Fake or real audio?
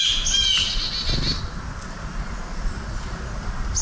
real